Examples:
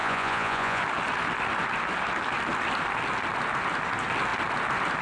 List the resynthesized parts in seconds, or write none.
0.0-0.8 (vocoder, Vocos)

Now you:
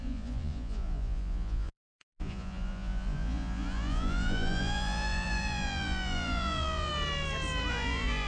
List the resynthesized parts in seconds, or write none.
0.0-6.9 (vocoder, Vocos); 7.7-8.3

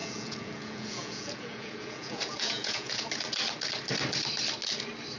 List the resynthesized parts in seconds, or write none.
0.0-3.1 (vocoder, Vocos)

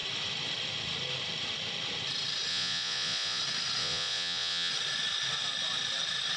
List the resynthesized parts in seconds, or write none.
2.5-3.4 (vocoder, Vocos); 3.8-4.7

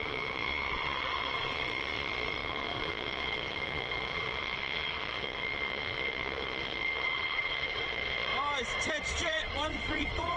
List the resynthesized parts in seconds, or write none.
0.0-8.3 (vocoder, Vocos); 9.0-10.4